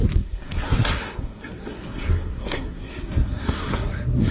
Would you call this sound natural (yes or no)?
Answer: no